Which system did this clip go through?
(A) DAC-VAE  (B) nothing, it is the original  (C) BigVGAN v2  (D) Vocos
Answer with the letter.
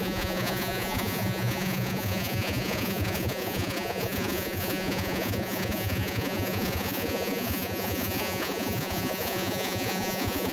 D